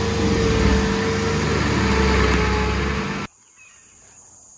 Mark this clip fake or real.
real